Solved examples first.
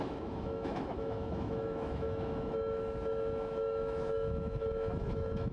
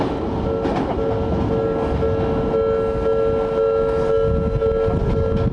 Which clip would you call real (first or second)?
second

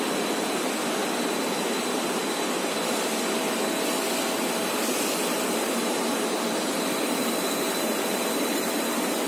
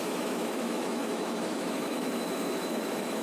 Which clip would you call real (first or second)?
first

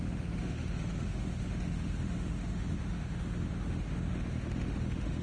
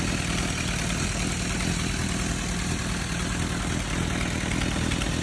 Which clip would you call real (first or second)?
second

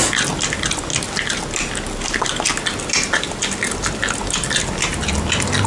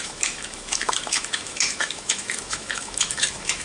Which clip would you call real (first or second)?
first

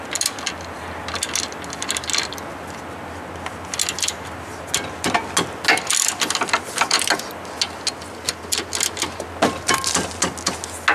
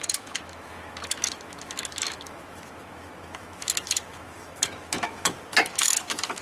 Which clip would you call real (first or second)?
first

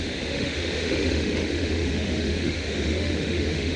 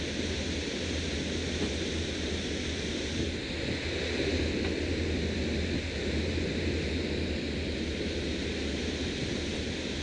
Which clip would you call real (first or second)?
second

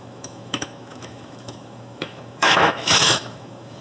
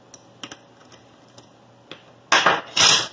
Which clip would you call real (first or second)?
second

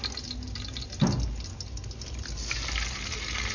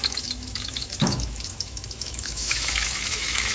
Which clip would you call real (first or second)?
first